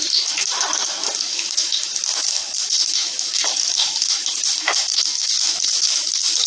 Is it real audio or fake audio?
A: fake